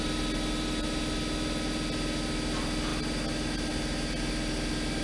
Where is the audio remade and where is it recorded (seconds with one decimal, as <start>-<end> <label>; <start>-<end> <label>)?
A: 0.0-5.0 recorded